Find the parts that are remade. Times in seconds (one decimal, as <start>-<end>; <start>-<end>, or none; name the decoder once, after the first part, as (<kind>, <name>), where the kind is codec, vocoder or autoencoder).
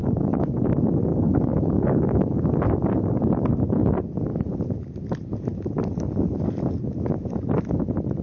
0.0-0.5 (codec, DAC); 1.1-2.4